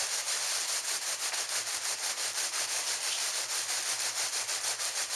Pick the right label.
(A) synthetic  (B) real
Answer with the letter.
B